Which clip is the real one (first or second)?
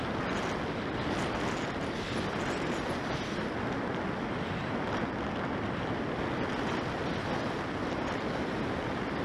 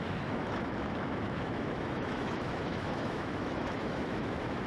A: first